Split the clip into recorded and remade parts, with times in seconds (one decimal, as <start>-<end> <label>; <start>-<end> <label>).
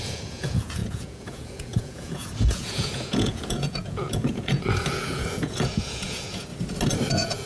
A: 0.0-6.5 remade; 6.5-7.1 recorded; 7.1-7.5 remade